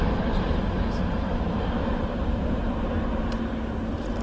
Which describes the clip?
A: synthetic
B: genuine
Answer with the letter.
A